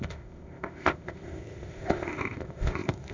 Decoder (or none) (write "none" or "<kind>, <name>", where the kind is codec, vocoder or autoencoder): codec, ZipCodec